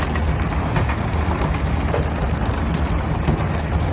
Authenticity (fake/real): real